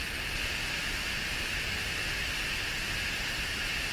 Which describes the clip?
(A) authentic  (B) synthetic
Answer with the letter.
A